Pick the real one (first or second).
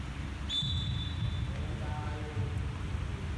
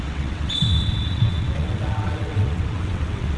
first